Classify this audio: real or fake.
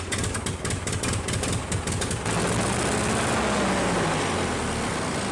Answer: real